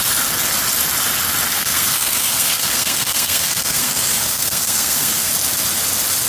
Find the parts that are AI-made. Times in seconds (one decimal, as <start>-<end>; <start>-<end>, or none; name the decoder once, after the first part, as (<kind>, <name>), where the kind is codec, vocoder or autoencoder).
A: 1.5-5.3 (codec, SNAC)